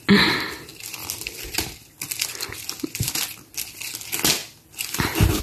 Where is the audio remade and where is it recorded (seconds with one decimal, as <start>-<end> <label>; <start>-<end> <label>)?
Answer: 0.0-5.4 recorded